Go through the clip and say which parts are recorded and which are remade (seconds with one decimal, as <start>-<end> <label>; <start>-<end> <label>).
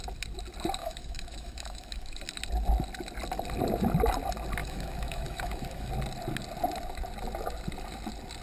0.0-0.8 recorded; 0.8-2.2 remade; 2.2-4.6 recorded; 4.6-5.9 remade; 5.9-8.4 recorded